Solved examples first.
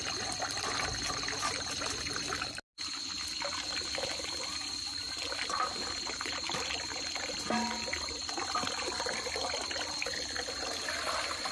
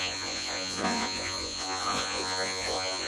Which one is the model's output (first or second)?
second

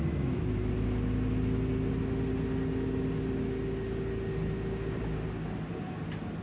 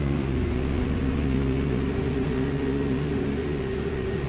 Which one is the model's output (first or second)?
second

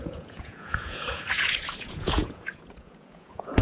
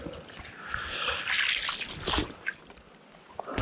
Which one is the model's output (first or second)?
first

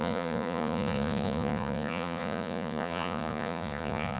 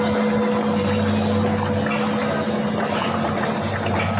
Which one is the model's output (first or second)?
first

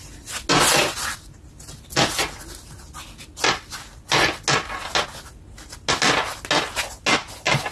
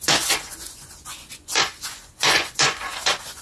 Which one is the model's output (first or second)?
second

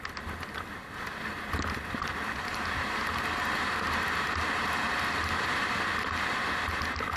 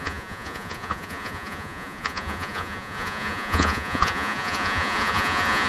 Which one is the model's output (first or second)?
second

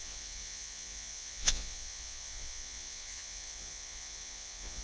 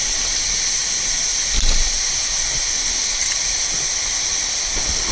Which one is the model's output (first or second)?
first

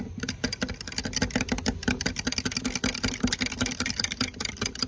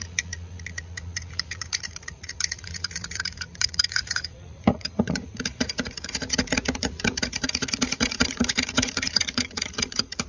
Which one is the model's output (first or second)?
second